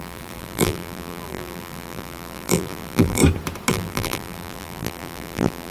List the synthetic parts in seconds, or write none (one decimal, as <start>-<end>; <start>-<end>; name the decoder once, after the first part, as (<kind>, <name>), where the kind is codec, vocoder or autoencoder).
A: 0.0-3.2 (vocoder, BigVGAN v2); 3.7-5.7